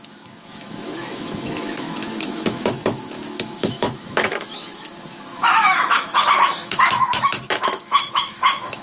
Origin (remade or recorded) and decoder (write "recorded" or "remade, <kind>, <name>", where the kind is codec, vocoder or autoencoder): remade, autoencoder, DAC-VAE